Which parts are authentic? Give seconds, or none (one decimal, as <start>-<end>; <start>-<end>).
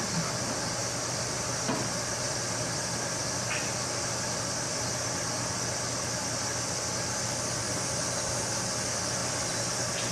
0.0-10.1